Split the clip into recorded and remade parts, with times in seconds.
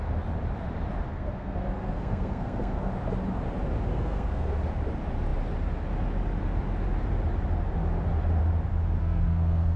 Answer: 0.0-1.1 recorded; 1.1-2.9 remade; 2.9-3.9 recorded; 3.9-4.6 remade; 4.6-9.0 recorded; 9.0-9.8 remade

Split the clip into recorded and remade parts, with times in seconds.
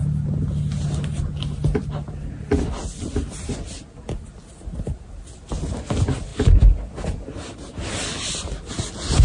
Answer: 0.0-9.2 recorded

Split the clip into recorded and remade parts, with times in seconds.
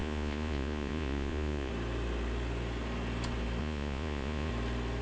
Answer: 0.0-1.7 remade; 1.7-3.6 recorded; 3.6-4.5 remade; 4.5-5.0 recorded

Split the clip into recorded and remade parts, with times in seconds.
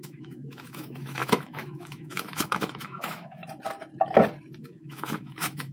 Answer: 0.0-3.4 remade; 3.4-4.6 recorded; 4.6-5.7 remade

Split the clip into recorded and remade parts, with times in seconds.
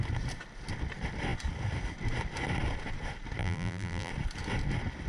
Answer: 0.0-3.4 recorded; 3.4-4.1 remade; 4.1-5.1 recorded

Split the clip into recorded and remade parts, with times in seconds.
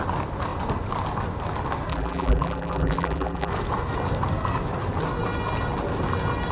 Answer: 0.0-1.9 recorded; 1.9-3.5 remade; 3.5-6.5 recorded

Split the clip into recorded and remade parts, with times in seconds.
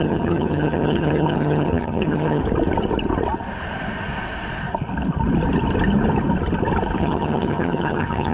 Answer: 0.0-2.4 remade; 2.4-7.0 recorded; 7.0-8.3 remade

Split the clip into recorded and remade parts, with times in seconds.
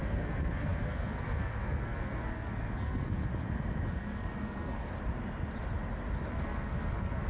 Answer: 0.0-3.3 remade; 3.3-3.9 recorded; 3.9-4.9 remade; 4.9-6.3 recorded; 6.3-7.3 remade